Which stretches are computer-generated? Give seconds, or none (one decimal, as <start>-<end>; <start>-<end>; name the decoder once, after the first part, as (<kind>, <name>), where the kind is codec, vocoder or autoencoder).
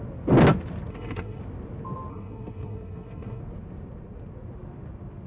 0.9-1.4 (codec, SNAC); 2.1-3.4